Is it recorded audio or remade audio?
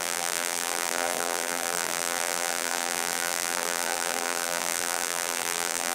remade